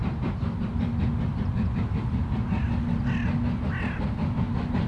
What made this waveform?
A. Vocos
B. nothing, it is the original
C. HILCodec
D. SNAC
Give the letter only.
B